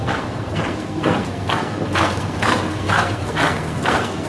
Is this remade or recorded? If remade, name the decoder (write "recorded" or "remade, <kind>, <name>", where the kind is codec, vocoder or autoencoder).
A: remade, codec, SNAC